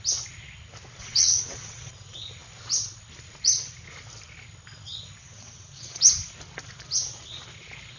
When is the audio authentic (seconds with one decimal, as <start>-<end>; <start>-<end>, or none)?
0.0-1.0; 1.9-5.2; 6.0-8.0